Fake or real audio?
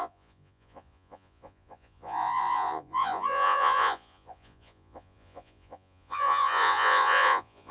fake